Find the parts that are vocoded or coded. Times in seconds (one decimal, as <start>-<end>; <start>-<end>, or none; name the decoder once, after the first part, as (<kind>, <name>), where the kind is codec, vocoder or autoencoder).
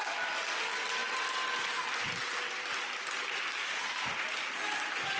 none